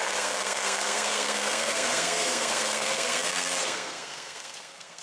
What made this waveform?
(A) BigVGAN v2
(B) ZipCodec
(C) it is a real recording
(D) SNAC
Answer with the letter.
D